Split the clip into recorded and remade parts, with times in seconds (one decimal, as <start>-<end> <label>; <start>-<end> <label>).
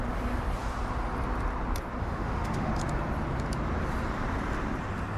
0.0-2.0 recorded; 2.0-2.7 remade; 2.7-5.2 recorded